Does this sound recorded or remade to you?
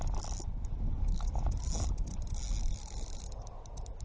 recorded